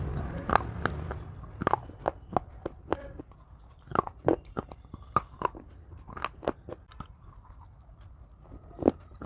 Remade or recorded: remade